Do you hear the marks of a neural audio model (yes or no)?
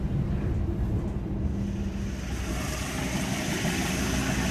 no